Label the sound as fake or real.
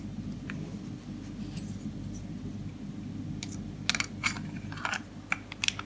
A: real